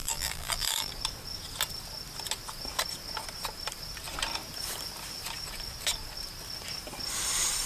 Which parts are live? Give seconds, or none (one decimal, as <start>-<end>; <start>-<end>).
0.9-7.7